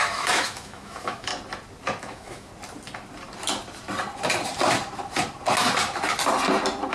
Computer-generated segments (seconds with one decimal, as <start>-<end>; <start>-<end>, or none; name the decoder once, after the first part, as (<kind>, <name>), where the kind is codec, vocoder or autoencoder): 0.0-1.3 (autoencoder, DAC-VAE); 2.0-2.5